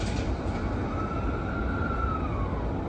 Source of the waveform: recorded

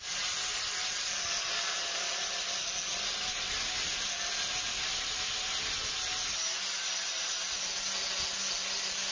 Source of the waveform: recorded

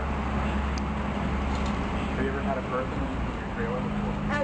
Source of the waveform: recorded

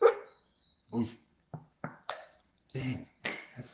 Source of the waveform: remade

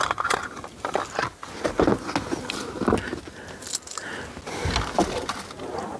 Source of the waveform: recorded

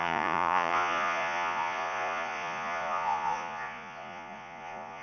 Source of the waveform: remade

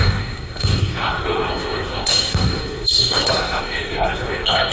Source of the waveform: remade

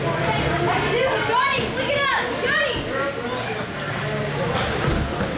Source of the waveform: recorded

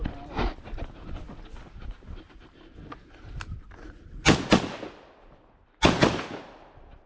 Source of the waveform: recorded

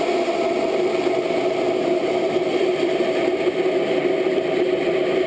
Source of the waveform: recorded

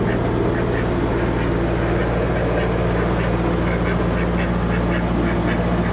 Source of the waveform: recorded